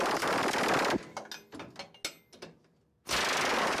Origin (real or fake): real